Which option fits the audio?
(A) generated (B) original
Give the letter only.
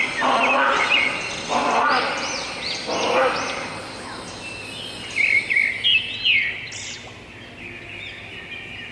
B